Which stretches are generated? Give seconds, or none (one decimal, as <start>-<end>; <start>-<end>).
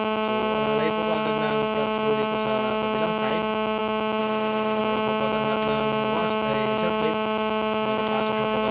4.2-4.8